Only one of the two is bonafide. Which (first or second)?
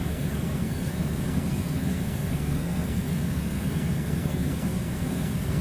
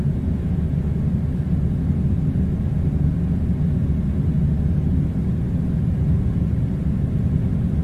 second